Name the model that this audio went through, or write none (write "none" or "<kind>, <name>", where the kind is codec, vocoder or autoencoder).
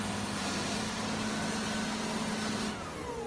none